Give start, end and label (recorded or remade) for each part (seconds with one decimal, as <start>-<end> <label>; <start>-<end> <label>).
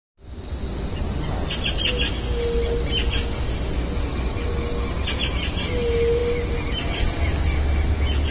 0.0-8.3 recorded